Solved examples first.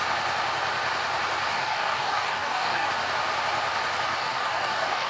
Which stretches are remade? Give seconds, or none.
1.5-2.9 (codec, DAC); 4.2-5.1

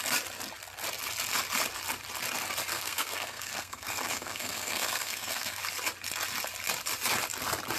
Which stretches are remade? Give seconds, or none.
2.7-5.6 (codec, SNAC)

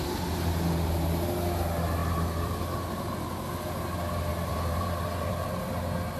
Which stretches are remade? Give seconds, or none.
2.0-2.6 (vocoder, BigVGAN v2); 4.3-5.6

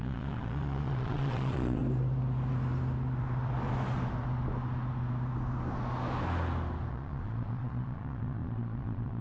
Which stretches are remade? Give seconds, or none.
0.0-1.8 (vocoder, Vocos); 6.9-9.2

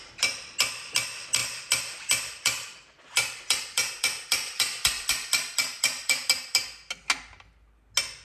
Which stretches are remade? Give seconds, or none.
1.4-6.3 (vocoder, BigVGAN v2)